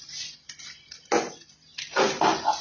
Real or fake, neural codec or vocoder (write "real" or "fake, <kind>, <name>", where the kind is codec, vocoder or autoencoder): real